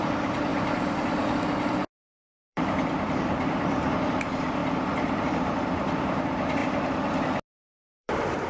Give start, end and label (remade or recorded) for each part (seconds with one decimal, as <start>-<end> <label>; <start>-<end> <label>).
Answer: 0.0-0.5 remade; 0.5-2.1 recorded; 2.1-4.6 remade; 4.6-5.2 recorded; 5.2-6.6 remade; 6.6-7.7 recorded; 7.7-8.5 remade